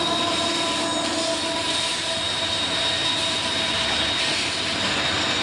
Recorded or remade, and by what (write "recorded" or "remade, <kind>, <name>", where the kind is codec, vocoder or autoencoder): recorded